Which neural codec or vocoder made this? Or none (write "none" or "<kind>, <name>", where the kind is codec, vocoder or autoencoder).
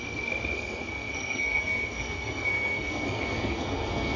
codec, SNAC